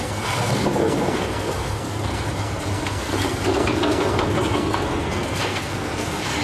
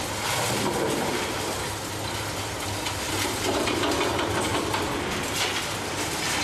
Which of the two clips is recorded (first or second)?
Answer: second